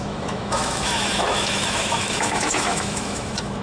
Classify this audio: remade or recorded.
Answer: remade